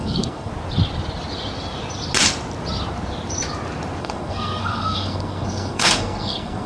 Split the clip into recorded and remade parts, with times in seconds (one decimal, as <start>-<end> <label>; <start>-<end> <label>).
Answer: 0.0-0.5 remade; 0.5-4.0 recorded; 4.0-6.7 remade